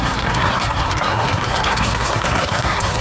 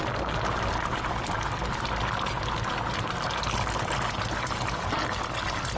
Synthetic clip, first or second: first